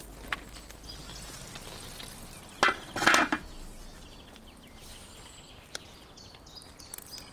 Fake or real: real